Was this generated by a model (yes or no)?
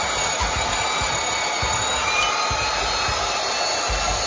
no